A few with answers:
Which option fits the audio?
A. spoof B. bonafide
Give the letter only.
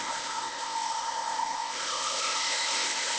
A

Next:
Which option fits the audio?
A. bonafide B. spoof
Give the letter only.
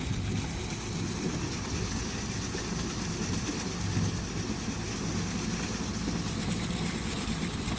A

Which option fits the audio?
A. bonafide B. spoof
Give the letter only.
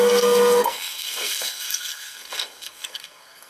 B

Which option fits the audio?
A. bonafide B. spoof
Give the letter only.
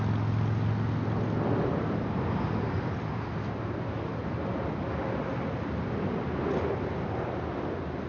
A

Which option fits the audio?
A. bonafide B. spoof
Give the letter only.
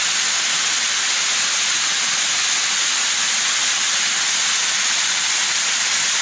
A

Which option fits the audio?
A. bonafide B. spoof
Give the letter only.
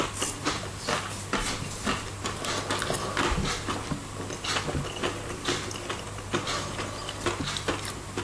A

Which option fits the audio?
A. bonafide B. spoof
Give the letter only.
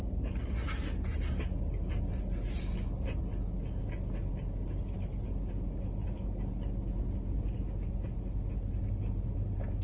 A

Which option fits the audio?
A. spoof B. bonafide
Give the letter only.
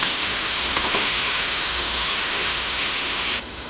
A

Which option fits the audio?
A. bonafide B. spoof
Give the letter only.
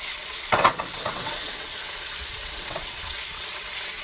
B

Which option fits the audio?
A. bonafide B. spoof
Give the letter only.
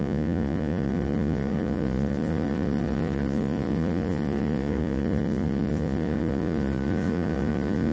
B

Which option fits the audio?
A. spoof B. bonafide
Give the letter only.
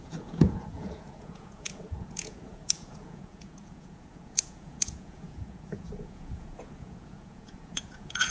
A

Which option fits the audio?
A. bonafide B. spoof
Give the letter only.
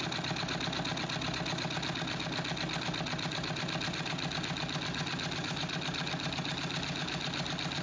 A